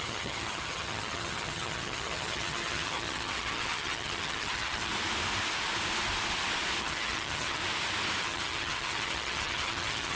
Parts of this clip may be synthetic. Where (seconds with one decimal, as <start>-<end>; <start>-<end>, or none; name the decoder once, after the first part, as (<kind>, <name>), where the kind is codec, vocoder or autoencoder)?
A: 0.0-4.9 (vocoder, HiFi-GAN); 6.8-7.6; 8.2-10.2